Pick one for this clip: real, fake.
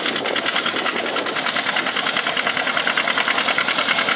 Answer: real